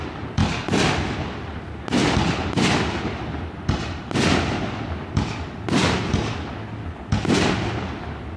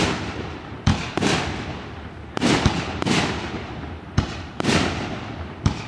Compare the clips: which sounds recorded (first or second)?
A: first